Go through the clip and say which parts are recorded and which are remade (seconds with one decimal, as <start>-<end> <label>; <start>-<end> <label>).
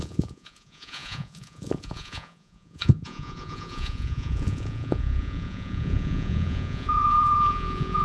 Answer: 0.0-8.0 remade